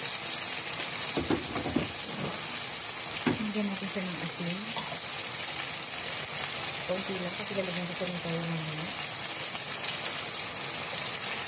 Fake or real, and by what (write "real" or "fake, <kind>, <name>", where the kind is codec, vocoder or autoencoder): real